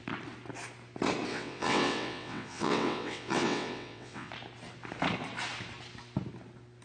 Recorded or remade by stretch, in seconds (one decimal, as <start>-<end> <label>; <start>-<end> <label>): 0.0-1.3 recorded; 1.3-4.3 remade; 4.3-6.8 recorded